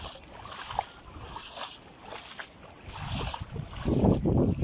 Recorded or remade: recorded